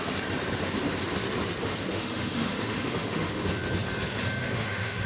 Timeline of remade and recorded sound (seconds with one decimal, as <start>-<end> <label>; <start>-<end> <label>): 0.0-1.9 recorded; 1.9-3.4 remade; 3.4-4.4 recorded; 4.4-5.1 remade